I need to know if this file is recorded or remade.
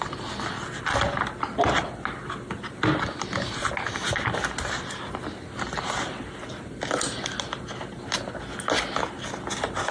recorded